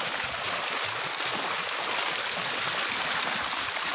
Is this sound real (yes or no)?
yes